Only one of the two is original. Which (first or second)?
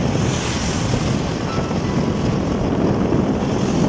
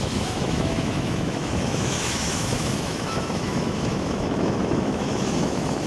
first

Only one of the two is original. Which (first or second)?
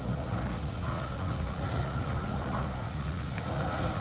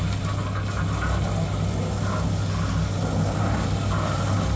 second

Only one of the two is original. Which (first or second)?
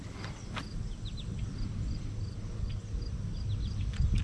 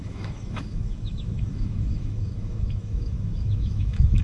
first